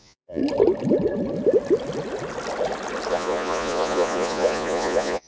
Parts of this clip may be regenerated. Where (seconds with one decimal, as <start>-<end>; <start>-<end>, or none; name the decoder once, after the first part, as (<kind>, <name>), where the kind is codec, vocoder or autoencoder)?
0.0-0.4 (vocoder, Vocos); 3.1-5.3